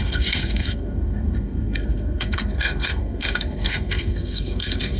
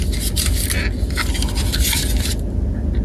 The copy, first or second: first